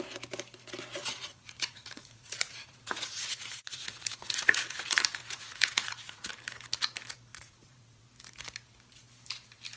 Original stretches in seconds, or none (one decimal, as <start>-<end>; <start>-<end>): 0.0-1.0; 6.3-7.3; 8.0-9.8